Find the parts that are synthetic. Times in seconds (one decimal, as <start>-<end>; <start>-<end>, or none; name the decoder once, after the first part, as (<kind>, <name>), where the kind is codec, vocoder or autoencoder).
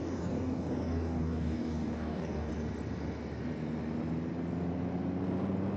0.0-2.5 (codec, DAC)